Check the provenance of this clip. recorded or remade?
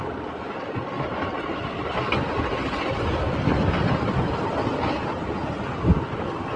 recorded